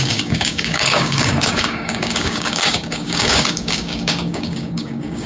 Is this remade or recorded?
remade